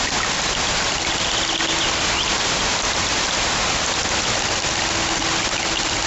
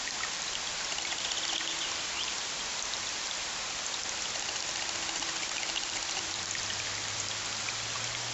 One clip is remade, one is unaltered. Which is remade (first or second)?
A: second